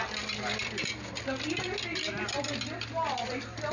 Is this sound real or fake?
real